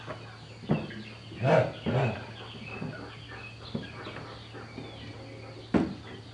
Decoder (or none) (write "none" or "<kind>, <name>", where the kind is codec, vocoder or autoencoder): none